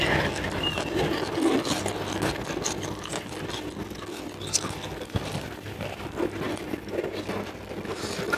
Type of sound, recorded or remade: recorded